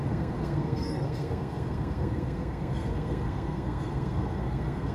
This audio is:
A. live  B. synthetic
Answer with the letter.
B